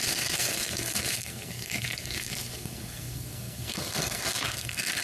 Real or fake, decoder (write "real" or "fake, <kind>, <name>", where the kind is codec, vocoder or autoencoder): fake, codec, SNAC